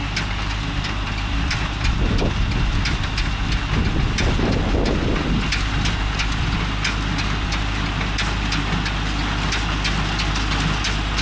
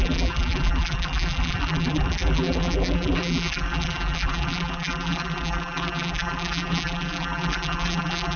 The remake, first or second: second